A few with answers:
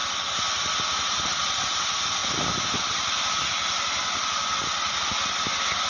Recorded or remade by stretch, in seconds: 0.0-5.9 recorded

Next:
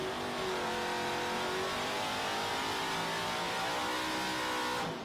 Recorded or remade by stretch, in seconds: 0.0-5.0 remade